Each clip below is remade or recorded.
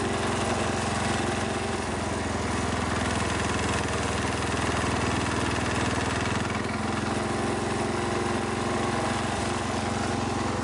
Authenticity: recorded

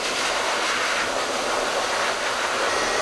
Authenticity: recorded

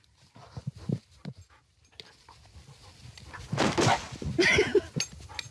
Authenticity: recorded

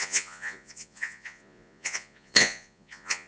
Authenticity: remade